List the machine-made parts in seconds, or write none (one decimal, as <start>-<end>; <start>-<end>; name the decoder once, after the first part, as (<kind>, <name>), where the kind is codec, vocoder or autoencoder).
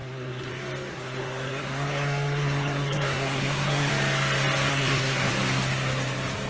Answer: 0.0-0.5 (codec, SNAC); 0.9-3.9; 4.7-5.3